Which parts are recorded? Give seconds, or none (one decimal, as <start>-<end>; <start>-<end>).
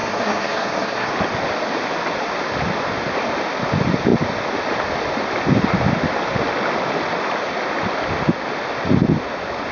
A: 1.1-9.7